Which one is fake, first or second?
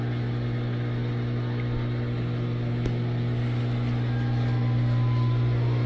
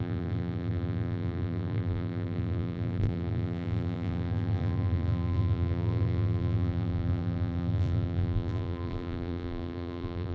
second